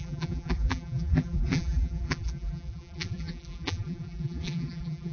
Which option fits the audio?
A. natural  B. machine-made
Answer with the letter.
B